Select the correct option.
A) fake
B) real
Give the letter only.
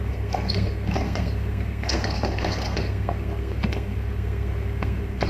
A